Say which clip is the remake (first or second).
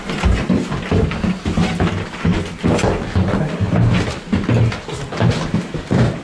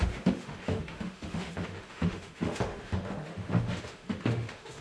second